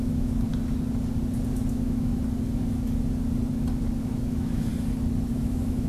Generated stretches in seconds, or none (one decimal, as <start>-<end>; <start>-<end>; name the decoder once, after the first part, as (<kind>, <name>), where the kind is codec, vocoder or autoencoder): 0.0-0.5 (autoencoder, DAC-VAE); 1.7-2.1; 4.0-4.7; 5.3-5.9